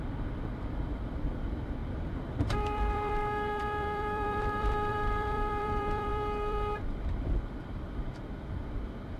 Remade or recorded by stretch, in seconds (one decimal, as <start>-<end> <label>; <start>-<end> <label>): 0.0-9.2 remade